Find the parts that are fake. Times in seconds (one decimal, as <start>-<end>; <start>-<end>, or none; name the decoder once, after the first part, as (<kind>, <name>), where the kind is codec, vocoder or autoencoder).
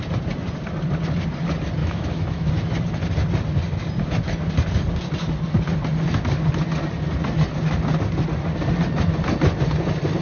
1.8-2.5 (autoencoder, DAC-VAE)